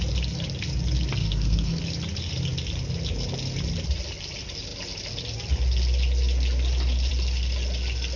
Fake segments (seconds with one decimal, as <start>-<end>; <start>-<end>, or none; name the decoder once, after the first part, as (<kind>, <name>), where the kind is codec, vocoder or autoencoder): 1.2-1.8 (codec, SNAC)